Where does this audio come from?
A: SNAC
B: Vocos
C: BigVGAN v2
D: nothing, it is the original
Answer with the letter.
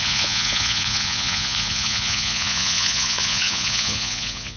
B